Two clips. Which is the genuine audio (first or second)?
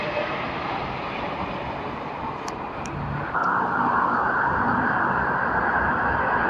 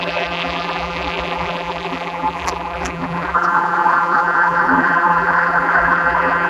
first